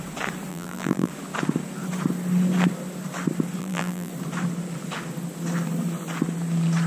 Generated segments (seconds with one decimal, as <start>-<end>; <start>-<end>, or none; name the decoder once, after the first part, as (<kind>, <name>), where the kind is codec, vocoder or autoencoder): 0.5-1.1 (vocoder, BigVGAN v2); 3.6-4.1